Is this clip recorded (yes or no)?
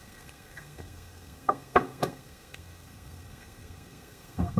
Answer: no